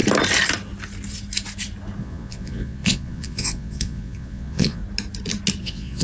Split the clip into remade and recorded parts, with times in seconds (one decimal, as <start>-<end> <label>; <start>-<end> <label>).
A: 0.0-2.0 recorded; 2.0-4.8 remade; 4.8-5.6 recorded; 5.6-6.0 remade